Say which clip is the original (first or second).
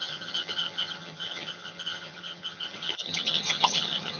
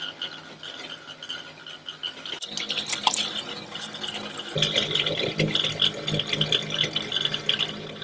second